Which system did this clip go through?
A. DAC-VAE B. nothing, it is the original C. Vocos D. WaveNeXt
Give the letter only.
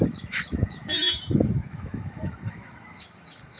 A